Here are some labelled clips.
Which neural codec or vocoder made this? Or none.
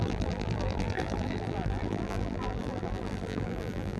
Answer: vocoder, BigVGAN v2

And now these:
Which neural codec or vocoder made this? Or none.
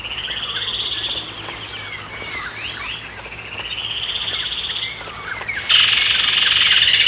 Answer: none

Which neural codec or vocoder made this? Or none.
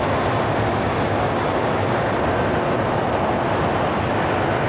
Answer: none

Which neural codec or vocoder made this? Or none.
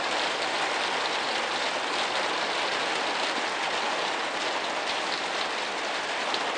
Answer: none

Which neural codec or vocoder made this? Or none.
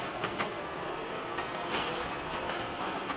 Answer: codec, SNAC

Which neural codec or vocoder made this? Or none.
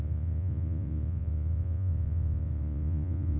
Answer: vocoder, Vocos